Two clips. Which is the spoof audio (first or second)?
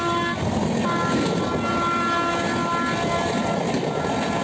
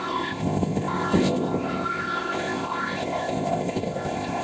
second